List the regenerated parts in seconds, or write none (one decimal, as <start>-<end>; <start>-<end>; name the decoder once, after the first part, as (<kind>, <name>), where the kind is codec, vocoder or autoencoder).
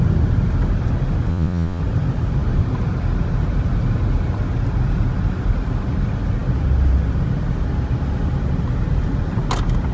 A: 1.3-1.8 (vocoder, Vocos)